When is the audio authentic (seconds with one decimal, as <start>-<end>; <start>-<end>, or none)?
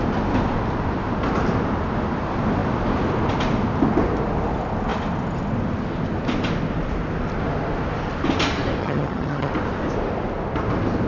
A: 0.0-8.8; 9.5-11.1